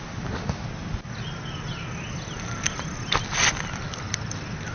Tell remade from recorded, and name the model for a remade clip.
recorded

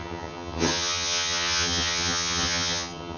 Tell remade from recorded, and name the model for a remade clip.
remade, vocoder, HiFi-GAN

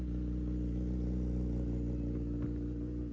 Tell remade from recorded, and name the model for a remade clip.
recorded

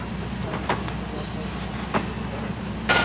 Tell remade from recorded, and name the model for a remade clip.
recorded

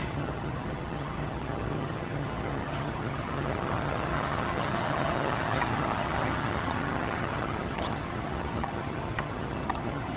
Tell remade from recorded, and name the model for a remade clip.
remade, vocoder, HiFi-GAN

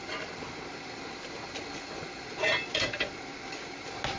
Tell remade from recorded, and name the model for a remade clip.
recorded